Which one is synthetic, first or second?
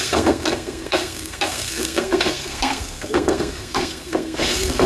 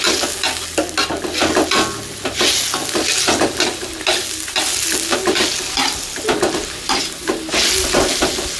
first